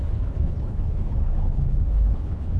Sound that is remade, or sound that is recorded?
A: remade